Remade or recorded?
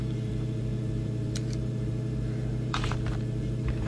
remade